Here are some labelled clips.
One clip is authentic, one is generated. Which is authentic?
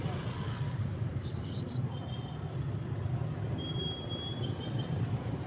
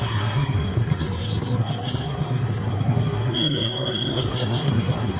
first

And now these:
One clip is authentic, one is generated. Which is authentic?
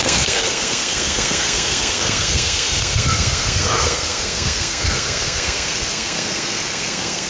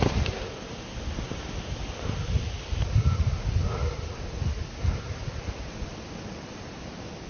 second